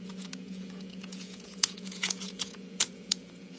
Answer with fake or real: fake